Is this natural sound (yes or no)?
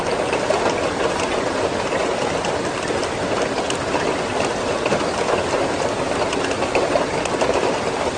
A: yes